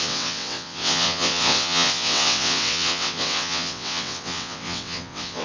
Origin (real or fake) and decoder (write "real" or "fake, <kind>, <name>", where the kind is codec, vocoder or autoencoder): fake, vocoder, WaveNeXt